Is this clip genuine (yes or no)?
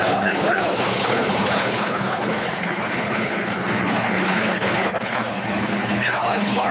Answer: no